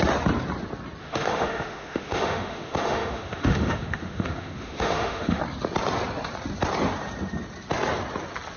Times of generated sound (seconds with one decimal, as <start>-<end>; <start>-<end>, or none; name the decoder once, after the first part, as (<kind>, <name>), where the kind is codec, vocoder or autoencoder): 1.0-5.4 (autoencoder, DAC-VAE)